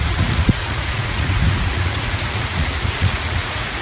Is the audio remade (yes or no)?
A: yes